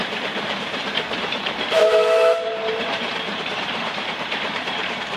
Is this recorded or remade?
remade